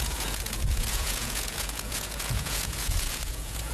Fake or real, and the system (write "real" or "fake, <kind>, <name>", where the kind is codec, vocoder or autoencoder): fake, vocoder, Vocos